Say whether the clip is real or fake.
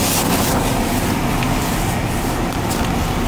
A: real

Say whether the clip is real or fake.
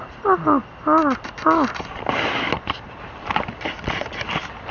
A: real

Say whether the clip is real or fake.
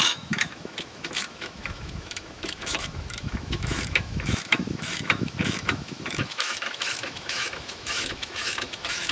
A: fake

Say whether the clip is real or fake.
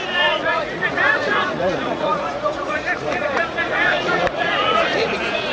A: fake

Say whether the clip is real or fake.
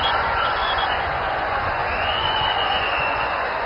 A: fake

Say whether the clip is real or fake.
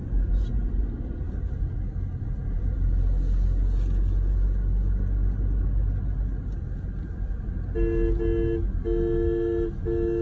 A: real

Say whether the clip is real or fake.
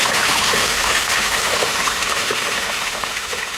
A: fake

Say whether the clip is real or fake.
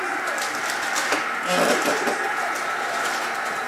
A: real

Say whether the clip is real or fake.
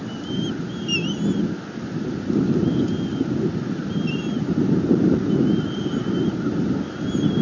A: real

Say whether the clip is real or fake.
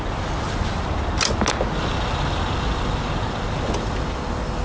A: real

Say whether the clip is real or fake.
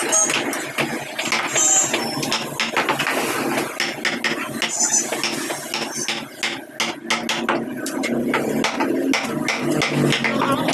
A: real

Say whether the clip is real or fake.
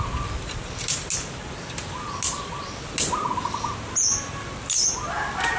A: real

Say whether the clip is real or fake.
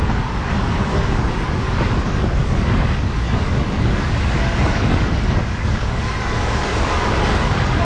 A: fake